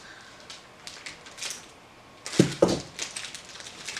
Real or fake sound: real